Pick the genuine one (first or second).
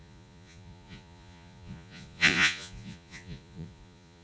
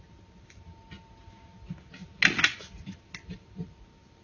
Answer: second